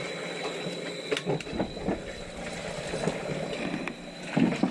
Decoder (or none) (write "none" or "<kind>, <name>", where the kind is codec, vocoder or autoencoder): none